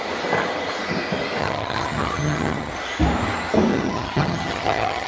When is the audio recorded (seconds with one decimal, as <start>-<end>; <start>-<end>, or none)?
0.0-1.4; 2.7-3.7